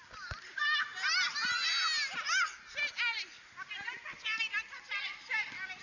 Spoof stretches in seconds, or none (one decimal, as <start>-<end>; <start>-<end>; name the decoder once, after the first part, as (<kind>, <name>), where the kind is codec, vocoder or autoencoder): none